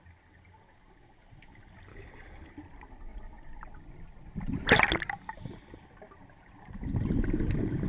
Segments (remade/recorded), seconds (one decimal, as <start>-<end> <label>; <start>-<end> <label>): 0.0-1.9 recorded; 1.9-2.5 remade; 2.5-7.9 recorded